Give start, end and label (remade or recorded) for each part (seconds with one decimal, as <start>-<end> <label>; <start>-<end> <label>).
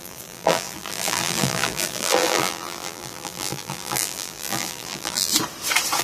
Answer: 0.0-5.3 remade; 5.3-6.0 recorded